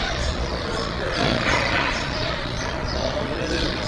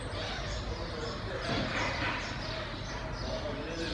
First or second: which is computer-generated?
first